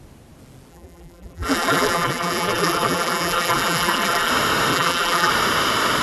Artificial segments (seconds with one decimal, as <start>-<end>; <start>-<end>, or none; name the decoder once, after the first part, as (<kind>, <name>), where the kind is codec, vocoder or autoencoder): 0.7-4.3 (vocoder, BigVGAN v2); 4.7-5.3